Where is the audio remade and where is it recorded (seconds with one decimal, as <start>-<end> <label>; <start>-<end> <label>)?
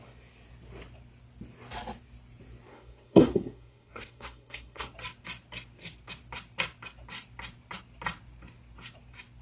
0.0-2.7 recorded; 2.7-4.9 remade; 4.9-9.4 recorded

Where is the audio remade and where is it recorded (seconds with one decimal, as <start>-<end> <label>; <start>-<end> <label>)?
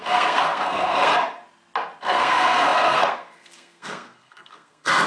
0.0-1.1 remade; 1.1-2.0 recorded; 2.0-5.1 remade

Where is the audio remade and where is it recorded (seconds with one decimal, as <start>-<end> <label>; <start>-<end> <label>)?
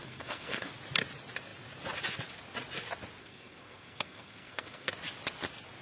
0.0-0.7 remade; 0.7-3.2 recorded; 3.2-4.9 remade; 4.9-5.8 recorded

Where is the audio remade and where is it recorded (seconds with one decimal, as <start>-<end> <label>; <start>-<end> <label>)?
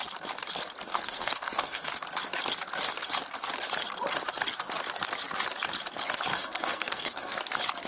0.0-0.9 recorded; 0.9-1.9 remade; 1.9-6.3 recorded; 6.3-7.4 remade; 7.4-7.9 recorded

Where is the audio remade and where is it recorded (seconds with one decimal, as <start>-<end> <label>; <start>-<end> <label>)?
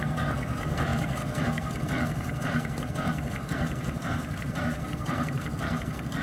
0.0-6.2 remade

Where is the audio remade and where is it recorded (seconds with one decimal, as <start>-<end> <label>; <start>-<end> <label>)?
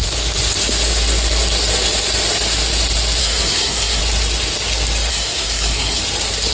0.0-3.2 recorded; 3.2-4.0 remade; 4.0-5.1 recorded; 5.1-6.0 remade; 6.0-6.5 recorded